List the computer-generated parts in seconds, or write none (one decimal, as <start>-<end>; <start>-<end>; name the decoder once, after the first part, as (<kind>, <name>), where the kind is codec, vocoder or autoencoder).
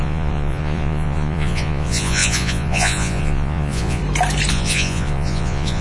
0.0-4.0 (vocoder, Vocos); 4.5-5.8